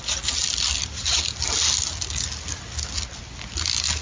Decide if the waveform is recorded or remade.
recorded